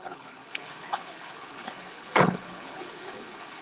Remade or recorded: remade